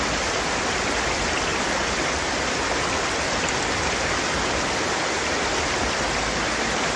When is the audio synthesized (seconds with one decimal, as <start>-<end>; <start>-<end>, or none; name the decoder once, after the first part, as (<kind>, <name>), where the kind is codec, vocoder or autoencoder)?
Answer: none